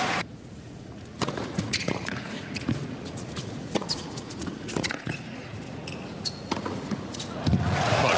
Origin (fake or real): fake